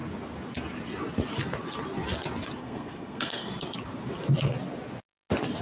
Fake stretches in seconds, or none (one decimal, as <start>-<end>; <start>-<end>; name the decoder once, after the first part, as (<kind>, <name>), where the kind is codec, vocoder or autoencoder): 2.6-3.5 (codec, SNAC)